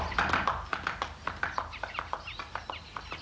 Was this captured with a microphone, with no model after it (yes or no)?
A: yes